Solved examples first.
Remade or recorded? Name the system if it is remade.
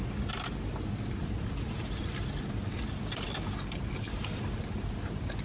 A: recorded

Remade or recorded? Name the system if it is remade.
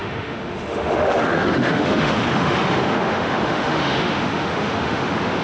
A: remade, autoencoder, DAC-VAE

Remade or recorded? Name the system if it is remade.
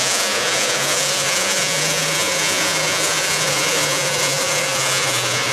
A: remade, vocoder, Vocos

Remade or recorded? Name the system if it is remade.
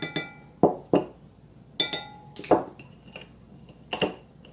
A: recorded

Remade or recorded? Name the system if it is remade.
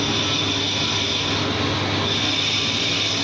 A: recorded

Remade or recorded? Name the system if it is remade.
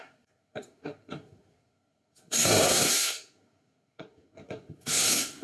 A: remade, codec, SNAC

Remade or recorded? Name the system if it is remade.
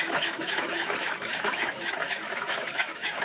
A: remade, autoencoder, DAC-VAE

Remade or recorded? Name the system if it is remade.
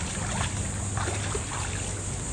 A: recorded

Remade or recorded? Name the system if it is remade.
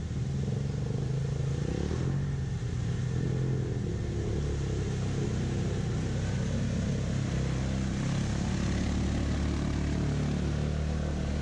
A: recorded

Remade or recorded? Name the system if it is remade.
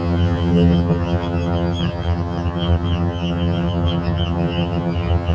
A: remade, vocoder, HiFi-GAN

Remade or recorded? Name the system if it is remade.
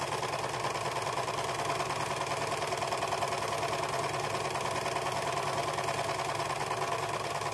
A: recorded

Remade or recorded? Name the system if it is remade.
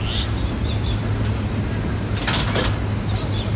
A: recorded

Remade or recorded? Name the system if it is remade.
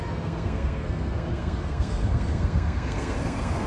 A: remade, codec, SNAC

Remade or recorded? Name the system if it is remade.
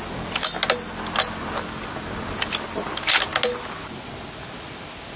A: recorded